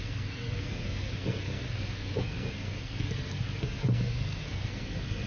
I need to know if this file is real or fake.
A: fake